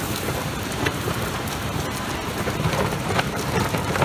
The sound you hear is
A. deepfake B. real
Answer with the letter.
A